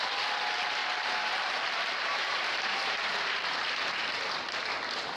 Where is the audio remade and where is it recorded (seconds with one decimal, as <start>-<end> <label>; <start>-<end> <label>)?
0.0-0.8 recorded; 0.8-3.9 remade; 3.9-5.2 recorded